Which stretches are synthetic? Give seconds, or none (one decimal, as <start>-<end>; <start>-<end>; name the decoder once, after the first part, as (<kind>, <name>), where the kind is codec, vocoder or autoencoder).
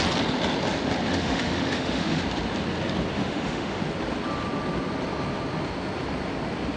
1.1-2.2 (autoencoder, DAC-VAE); 3.2-3.8